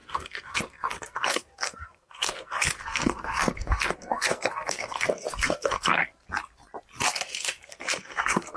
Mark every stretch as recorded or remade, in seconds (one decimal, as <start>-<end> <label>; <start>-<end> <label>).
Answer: 0.0-6.0 remade; 6.0-7.1 recorded; 7.1-8.6 remade